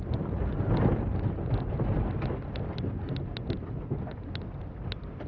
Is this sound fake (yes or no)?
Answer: no